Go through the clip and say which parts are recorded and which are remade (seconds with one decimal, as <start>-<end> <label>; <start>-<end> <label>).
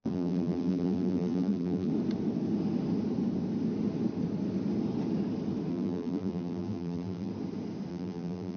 0.0-1.9 remade; 1.9-5.7 recorded; 5.7-7.3 remade; 7.3-7.9 recorded; 7.9-8.6 remade